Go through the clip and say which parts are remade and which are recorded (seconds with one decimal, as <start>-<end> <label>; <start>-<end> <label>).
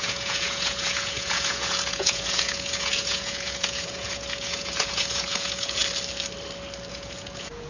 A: 0.0-5.8 remade; 5.8-6.9 recorded; 6.9-7.7 remade